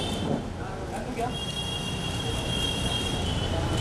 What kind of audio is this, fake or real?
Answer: real